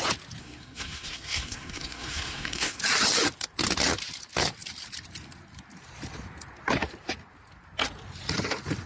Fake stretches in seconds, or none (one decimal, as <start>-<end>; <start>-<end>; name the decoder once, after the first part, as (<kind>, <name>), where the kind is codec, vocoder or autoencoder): 0.4-2.8 (codec, SNAC)